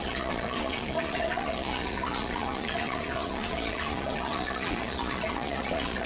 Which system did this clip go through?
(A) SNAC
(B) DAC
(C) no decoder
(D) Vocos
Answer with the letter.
D